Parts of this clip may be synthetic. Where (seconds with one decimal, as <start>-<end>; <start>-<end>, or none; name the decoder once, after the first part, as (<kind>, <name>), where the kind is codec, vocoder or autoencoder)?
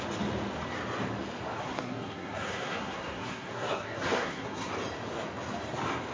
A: 1.6-4.7 (codec, SNAC)